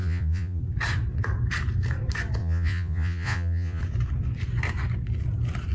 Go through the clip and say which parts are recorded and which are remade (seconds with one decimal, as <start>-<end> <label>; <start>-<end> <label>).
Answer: 0.0-0.6 remade; 0.6-2.4 recorded; 2.4-3.8 remade; 3.8-5.7 recorded